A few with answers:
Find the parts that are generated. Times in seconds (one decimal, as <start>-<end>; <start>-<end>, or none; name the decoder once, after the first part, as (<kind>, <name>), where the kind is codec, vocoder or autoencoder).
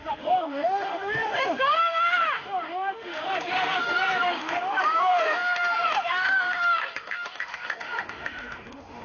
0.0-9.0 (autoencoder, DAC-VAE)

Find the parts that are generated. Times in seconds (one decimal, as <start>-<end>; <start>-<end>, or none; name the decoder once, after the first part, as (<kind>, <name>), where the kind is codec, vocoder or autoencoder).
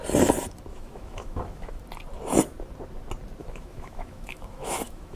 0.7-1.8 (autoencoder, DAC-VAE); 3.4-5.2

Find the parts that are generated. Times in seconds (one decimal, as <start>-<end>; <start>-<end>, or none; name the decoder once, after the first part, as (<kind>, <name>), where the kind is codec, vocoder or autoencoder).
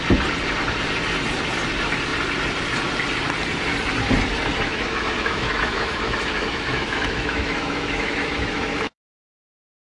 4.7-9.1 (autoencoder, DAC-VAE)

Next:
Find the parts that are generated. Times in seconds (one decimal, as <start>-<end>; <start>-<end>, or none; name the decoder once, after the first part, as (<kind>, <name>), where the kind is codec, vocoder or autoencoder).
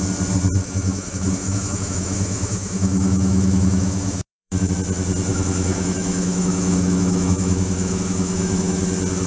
0.6-4.7 (autoencoder, DAC-VAE); 5.3-8.8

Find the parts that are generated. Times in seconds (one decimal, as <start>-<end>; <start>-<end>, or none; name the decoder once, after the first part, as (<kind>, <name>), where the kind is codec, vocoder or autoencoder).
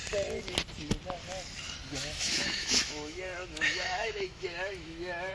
2.0-5.3 (autoencoder, DAC-VAE)